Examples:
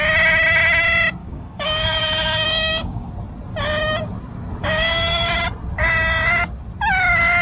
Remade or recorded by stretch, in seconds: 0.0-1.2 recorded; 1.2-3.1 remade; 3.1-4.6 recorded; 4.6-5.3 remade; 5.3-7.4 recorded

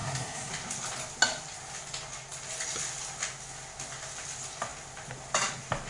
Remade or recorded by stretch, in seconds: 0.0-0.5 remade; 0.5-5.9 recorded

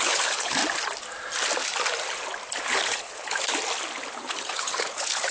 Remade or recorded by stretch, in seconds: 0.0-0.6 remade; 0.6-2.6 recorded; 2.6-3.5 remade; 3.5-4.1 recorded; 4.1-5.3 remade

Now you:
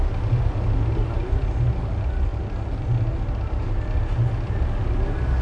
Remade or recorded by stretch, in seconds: 0.0-5.4 recorded